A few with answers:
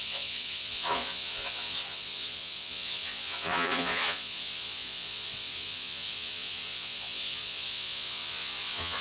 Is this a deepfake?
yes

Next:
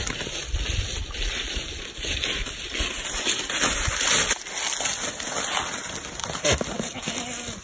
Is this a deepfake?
no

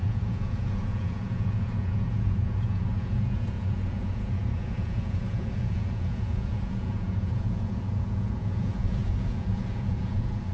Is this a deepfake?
yes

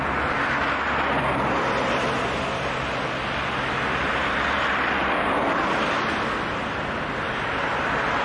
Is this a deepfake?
no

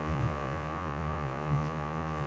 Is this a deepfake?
yes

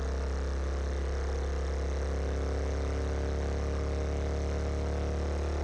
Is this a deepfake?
no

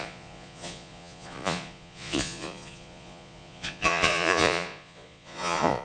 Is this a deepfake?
yes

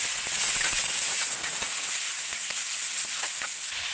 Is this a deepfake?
yes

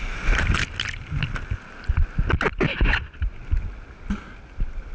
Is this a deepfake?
no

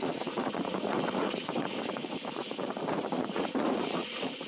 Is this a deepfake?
yes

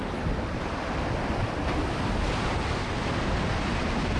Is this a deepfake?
no